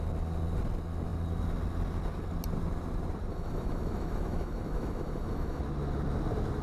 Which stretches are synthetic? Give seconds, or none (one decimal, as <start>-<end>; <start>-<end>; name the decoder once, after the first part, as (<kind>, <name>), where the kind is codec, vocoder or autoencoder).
3.3-5.6 (autoencoder, DAC-VAE)